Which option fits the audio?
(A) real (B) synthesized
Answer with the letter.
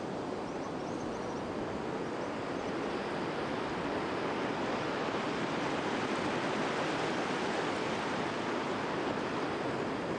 A